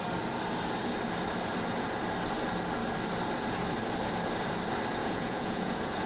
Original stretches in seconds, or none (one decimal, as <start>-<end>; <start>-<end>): 0.0-5.0